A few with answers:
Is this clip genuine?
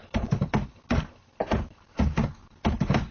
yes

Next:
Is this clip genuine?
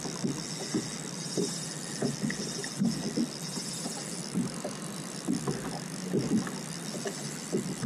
no